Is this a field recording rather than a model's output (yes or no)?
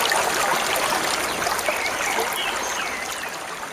yes